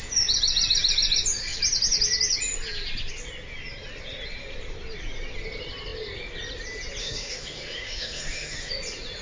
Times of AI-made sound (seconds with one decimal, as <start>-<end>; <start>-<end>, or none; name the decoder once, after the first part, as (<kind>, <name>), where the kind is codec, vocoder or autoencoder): 7.0-8.7 (autoencoder, DAC-VAE)